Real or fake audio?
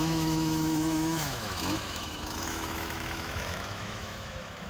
fake